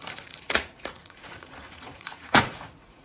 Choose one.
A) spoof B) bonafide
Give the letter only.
A